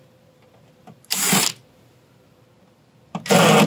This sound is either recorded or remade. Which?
recorded